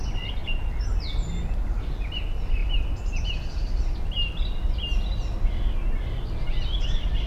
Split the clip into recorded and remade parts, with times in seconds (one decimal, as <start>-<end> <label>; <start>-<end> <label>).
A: 0.0-7.3 recorded